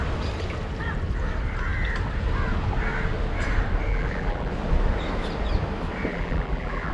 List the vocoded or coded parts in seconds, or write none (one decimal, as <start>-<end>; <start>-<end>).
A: 3.9-4.5; 6.1-6.9